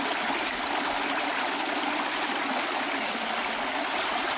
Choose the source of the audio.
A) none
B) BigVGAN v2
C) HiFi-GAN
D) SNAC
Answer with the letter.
A